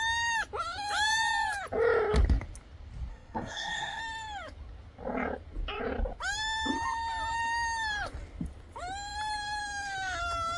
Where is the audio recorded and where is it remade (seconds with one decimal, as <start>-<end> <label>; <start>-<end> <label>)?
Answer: 0.0-3.1 recorded; 3.1-4.0 remade; 4.0-10.6 recorded